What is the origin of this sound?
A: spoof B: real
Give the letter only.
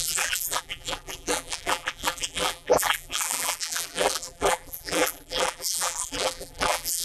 A